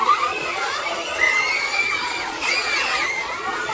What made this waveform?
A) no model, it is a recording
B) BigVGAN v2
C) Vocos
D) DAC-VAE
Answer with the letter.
C